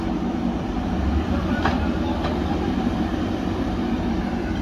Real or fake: fake